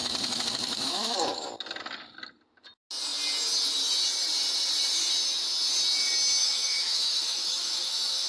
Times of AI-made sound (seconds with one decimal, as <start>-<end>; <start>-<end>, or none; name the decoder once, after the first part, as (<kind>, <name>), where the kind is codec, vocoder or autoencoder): 0.0-1.5 (autoencoder, DAC-VAE); 6.4-8.3